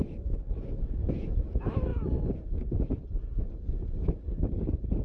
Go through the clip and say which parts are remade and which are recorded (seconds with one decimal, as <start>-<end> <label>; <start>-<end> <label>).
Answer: 0.0-1.9 remade; 1.9-5.0 recorded